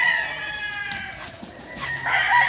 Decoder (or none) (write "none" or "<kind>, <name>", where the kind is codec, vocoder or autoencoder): none